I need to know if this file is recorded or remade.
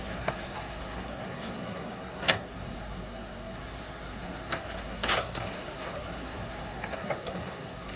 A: remade